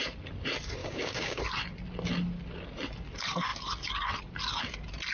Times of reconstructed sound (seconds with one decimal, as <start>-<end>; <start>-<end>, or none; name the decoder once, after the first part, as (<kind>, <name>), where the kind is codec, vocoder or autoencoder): 0.8-1.4 (codec, DAC)